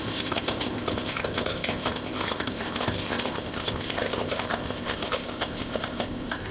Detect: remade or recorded remade